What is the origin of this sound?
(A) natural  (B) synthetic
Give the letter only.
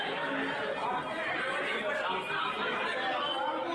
A